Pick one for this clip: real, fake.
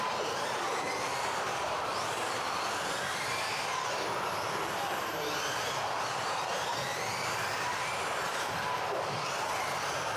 real